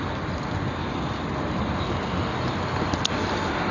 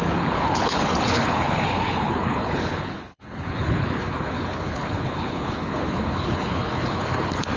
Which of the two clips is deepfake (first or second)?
second